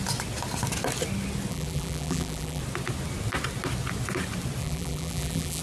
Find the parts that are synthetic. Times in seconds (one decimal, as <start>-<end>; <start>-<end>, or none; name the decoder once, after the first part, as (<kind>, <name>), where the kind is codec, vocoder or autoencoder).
1.5-2.6 (vocoder, BigVGAN v2); 4.6-5.6